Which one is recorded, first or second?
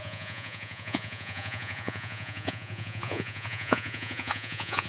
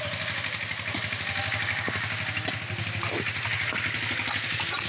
second